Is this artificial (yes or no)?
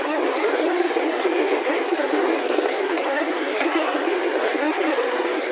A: yes